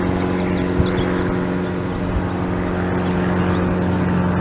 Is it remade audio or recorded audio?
recorded